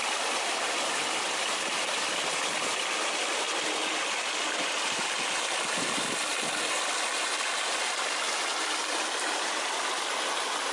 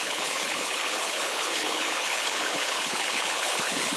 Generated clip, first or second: second